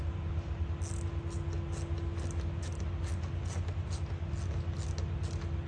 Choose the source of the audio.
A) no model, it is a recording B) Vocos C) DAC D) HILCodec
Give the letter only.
A